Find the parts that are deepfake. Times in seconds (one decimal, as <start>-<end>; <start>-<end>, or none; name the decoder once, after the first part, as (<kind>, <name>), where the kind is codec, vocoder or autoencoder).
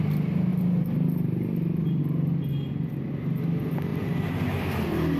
3.9-4.6 (vocoder, BigVGAN v2)